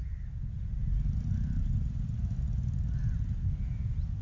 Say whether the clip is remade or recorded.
recorded